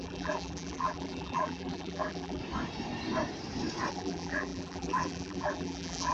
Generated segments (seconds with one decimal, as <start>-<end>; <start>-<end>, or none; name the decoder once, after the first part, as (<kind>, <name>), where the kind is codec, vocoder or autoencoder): 0.0-2.4 (vocoder, BigVGAN v2); 3.9-6.1